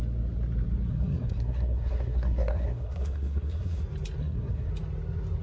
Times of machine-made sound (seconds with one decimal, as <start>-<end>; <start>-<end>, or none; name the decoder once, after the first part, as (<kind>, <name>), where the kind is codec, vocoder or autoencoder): 0.9-3.8 (codec, SNAC); 4.2-4.7